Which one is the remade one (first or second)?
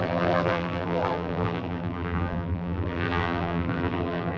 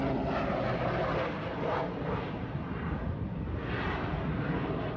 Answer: first